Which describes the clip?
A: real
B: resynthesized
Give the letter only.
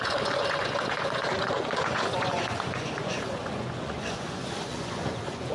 B